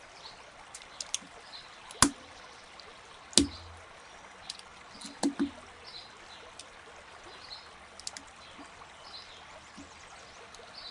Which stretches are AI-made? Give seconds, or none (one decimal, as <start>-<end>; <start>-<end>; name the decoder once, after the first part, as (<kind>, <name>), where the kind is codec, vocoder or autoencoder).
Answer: none